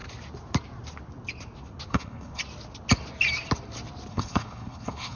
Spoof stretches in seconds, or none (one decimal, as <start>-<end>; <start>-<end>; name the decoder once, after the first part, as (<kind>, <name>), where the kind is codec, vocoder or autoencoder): 1.9-2.4 (codec, HILCodec); 4.1-5.2